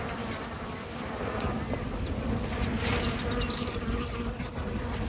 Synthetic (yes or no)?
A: no